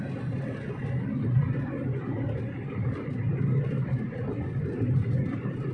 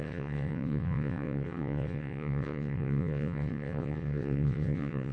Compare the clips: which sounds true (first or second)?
first